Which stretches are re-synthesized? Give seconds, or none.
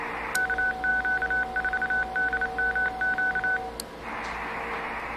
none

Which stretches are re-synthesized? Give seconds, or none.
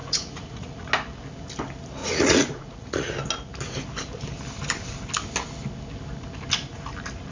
0.0-0.9 (vocoder, Vocos); 2.0-3.1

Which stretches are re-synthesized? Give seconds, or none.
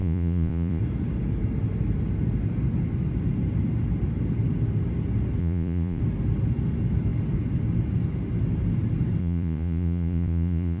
0.0-0.8 (vocoder, Vocos); 5.4-6.0; 9.2-10.8